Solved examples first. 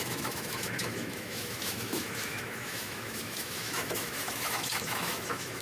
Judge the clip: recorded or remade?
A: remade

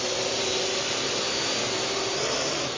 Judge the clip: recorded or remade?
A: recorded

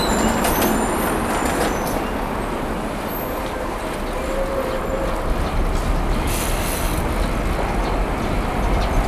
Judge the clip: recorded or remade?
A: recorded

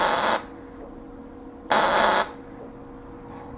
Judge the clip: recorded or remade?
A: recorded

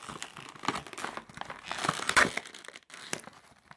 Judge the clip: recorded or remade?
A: recorded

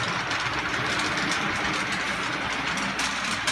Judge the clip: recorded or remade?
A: recorded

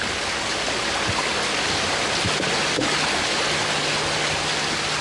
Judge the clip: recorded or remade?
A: recorded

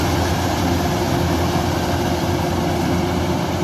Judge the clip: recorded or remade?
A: recorded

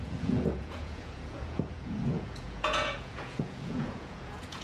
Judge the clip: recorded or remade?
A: remade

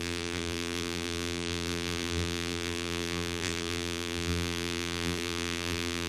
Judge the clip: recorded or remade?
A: remade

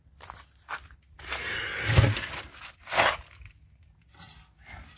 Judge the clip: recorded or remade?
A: recorded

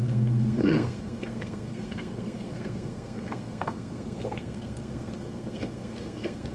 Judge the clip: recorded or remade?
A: remade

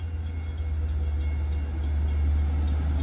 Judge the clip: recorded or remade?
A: recorded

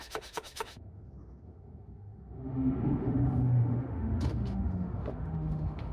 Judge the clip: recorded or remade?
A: remade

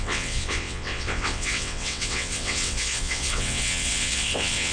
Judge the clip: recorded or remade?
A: remade